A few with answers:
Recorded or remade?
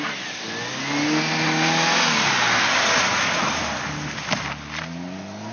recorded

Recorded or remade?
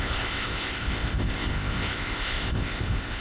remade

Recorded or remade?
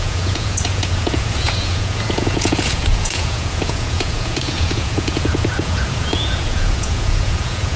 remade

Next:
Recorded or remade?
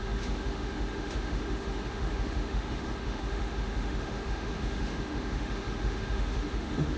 remade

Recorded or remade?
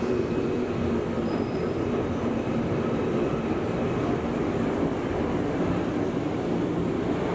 recorded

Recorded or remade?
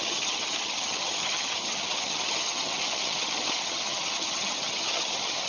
remade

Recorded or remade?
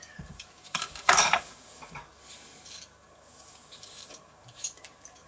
remade